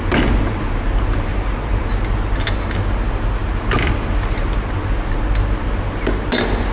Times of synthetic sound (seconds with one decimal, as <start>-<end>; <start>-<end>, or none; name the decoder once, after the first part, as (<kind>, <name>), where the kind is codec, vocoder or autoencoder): 1.3-1.9 (vocoder, BigVGAN v2)